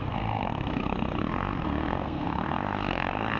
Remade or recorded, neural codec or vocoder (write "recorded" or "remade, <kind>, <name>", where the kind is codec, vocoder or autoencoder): remade, codec, SNAC